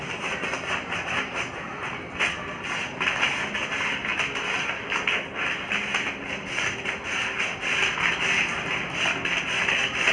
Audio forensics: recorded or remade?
recorded